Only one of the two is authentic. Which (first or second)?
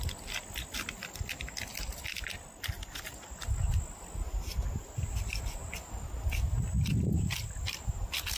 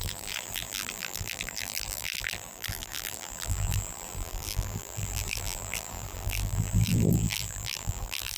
first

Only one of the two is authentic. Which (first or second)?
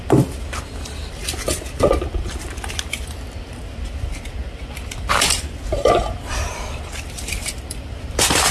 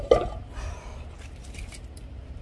second